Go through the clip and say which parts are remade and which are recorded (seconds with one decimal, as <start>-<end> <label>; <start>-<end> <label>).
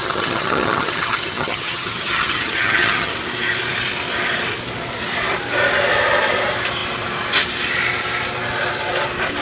0.0-3.1 remade; 3.1-9.4 recorded